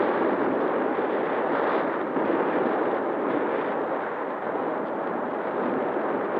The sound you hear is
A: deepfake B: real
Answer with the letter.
B